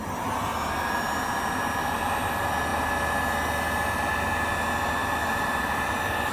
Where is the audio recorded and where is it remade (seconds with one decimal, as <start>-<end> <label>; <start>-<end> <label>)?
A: 0.0-6.3 recorded